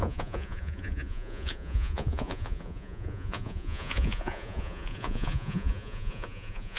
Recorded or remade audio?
remade